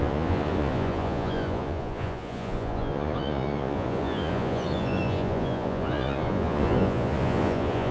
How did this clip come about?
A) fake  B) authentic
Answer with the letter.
A